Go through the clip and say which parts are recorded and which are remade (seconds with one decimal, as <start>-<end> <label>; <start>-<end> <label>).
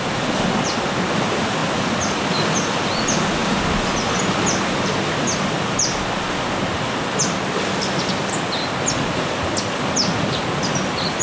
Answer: 0.0-11.2 recorded